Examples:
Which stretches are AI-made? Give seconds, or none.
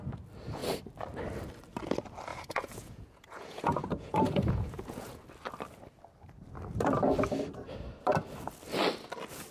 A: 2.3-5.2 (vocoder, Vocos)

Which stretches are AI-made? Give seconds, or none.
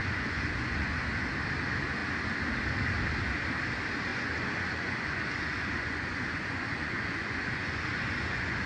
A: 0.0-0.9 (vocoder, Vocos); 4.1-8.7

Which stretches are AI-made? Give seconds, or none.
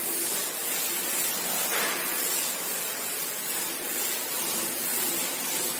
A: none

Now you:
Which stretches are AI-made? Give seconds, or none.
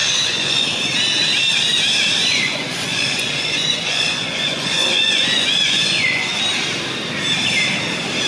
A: 0.0-0.8 (vocoder, Vocos); 2.2-6.4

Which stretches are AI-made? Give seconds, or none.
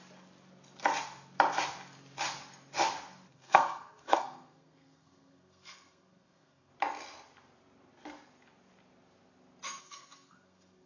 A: 3.3-6.7 (codec, SNAC); 9.8-10.9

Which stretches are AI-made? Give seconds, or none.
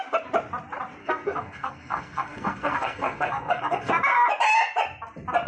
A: 1.0-3.9 (codec, SNAC)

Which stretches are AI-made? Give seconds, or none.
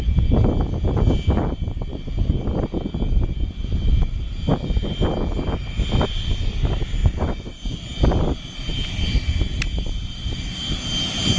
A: 7.0-7.5 (vocoder, Vocos)